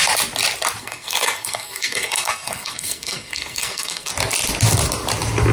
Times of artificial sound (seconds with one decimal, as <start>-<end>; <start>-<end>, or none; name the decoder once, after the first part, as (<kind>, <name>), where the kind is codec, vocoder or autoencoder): 0.8-4.1 (codec, SNAC)